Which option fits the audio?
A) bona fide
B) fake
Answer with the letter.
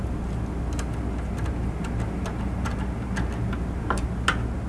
A